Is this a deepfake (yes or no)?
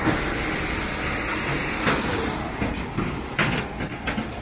no